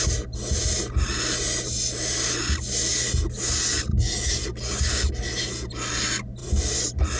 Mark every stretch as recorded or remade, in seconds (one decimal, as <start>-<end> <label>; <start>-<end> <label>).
0.0-6.4 recorded; 6.4-7.2 remade